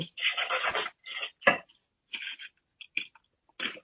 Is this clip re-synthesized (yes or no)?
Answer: no